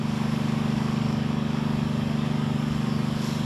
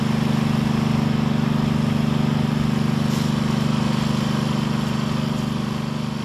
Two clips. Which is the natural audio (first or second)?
second